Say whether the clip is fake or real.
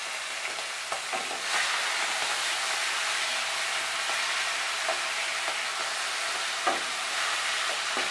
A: real